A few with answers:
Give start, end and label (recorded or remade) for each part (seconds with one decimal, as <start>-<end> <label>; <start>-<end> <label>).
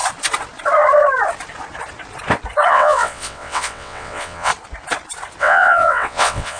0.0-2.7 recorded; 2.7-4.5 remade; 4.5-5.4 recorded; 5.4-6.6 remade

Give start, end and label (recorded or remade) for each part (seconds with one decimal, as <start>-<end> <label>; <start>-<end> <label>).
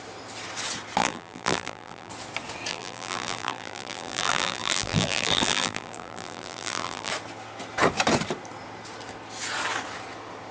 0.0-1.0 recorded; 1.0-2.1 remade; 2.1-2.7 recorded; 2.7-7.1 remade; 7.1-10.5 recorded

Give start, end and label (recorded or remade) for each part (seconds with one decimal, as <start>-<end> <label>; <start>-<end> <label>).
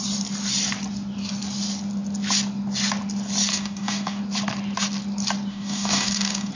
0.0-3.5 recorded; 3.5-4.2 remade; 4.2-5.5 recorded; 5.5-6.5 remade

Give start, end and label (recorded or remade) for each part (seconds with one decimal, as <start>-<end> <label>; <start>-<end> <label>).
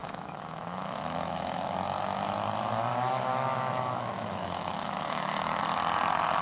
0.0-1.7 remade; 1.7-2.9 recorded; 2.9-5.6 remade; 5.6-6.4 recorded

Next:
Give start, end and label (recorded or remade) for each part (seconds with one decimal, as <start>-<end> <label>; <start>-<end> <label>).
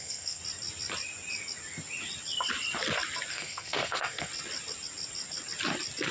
0.0-0.4 remade; 0.4-3.3 recorded; 3.3-4.3 remade; 4.3-6.1 recorded